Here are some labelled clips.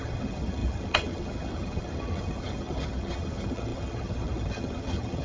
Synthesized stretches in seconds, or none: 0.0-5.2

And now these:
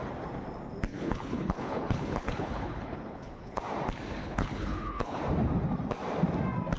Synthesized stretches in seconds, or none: 0.9-3.6; 4.2-5.2

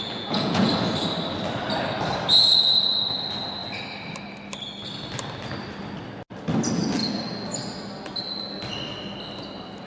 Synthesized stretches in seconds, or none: 0.0-0.7